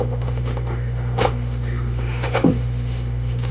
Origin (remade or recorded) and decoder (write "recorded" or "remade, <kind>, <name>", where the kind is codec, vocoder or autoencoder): remade, autoencoder, DAC-VAE